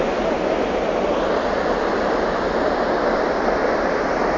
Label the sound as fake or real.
real